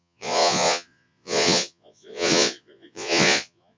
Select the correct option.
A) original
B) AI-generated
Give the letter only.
B